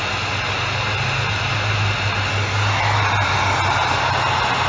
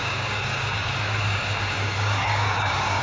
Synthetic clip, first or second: second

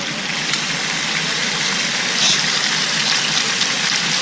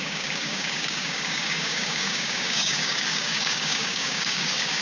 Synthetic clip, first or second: second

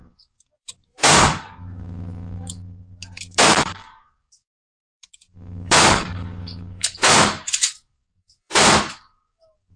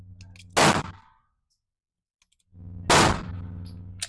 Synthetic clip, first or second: first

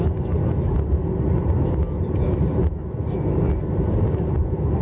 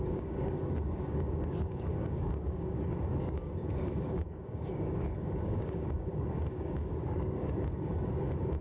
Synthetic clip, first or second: second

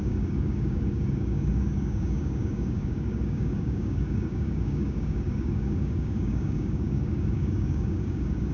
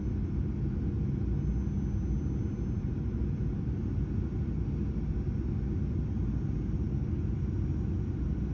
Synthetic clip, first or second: first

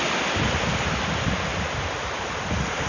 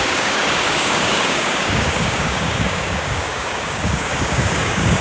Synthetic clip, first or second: second